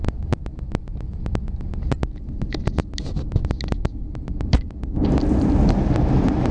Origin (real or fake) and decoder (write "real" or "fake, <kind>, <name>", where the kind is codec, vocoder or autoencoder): real